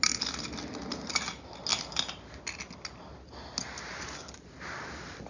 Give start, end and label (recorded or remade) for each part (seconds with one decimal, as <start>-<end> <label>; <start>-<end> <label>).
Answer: 0.0-5.3 recorded